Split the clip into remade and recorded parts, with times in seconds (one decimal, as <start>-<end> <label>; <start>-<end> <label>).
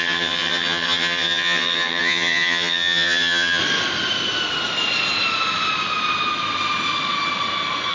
0.0-3.6 remade; 3.6-7.9 recorded